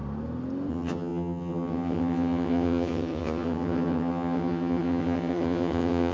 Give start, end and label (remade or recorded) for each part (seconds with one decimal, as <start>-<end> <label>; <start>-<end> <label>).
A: 0.0-0.7 recorded; 0.7-6.1 remade